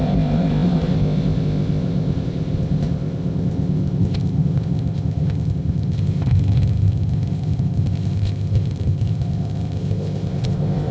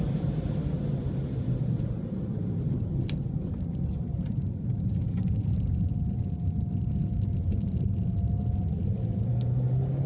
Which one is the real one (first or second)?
second